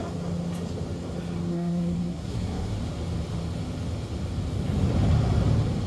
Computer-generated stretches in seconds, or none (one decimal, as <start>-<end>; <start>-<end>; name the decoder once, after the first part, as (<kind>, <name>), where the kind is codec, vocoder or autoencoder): 1.5-2.8 (codec, SNAC)